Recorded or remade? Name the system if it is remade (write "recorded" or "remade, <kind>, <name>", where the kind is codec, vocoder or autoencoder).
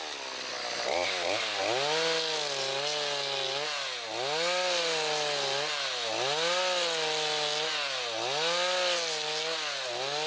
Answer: recorded